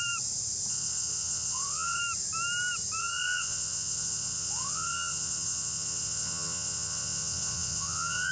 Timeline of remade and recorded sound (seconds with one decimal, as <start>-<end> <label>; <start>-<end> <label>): 0.0-0.7 recorded; 0.7-2.0 remade; 2.0-3.0 recorded; 3.0-8.3 remade